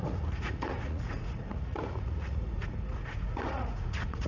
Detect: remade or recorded remade